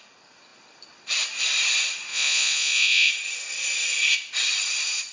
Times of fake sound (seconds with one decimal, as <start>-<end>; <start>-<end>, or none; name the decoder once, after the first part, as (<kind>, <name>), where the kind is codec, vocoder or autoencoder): 2.1-3.1 (vocoder, Vocos)